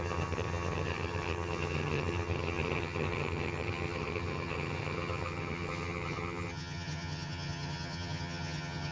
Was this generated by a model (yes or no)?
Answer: yes